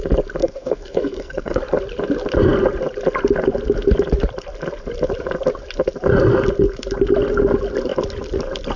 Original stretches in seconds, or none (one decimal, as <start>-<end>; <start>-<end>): 0.0-0.4; 1.6-8.8